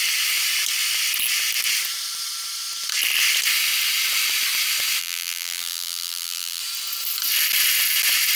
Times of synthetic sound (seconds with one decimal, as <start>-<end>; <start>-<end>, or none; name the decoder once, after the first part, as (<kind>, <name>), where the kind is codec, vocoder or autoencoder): 5.0-6.6 (vocoder, BigVGAN v2)